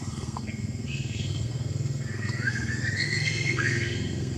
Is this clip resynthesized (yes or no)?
yes